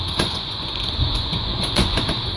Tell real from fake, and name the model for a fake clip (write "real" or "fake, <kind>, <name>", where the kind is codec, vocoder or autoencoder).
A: fake, vocoder, Vocos